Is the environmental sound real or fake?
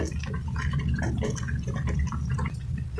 real